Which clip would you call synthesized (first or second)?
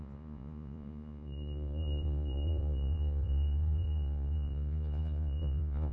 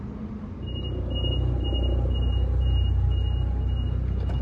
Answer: first